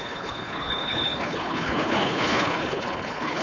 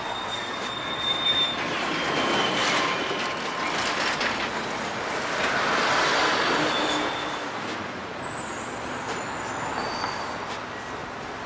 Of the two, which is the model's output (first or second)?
first